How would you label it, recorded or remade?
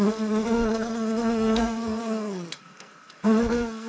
remade